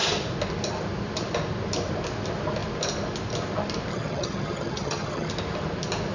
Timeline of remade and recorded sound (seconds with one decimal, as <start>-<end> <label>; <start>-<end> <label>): 0.0-3.9 recorded; 3.9-5.3 remade; 5.3-6.1 recorded